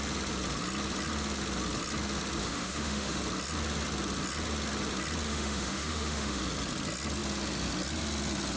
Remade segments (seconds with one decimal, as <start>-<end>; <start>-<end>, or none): 2.4-3.2; 5.3-6.4